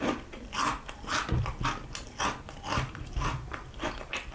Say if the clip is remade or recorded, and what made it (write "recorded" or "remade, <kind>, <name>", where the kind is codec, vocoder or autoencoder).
recorded